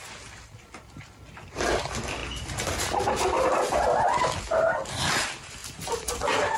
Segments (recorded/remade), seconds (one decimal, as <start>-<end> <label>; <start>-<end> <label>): 0.0-6.6 recorded